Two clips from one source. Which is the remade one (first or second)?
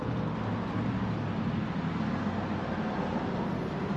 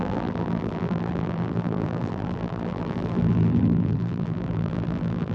second